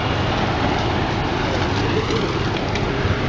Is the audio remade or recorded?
recorded